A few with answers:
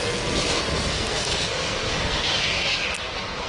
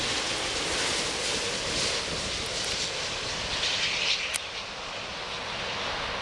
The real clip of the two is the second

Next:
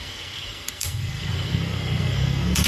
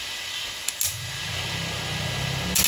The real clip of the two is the second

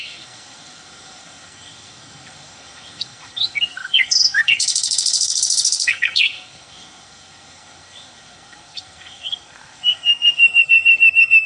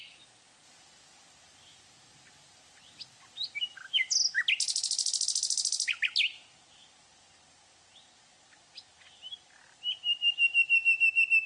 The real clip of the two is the second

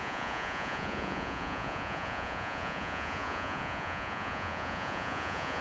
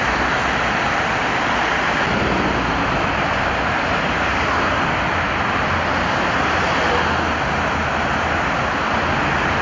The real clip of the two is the second